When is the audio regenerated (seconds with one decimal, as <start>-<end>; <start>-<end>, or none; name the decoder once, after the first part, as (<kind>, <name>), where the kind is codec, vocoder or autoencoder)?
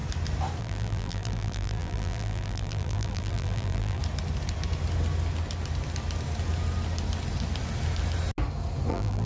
0.6-4.0 (vocoder, BigVGAN v2); 8.9-9.3